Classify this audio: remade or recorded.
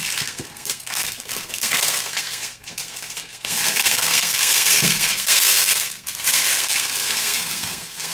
remade